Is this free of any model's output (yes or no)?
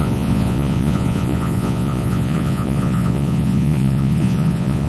no